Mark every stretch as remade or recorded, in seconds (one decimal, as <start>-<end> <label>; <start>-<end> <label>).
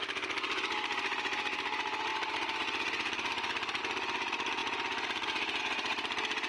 0.0-6.5 recorded